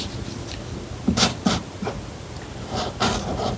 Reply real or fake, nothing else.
real